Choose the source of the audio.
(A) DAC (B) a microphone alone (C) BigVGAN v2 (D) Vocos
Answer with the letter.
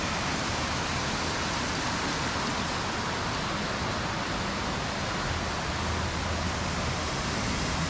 B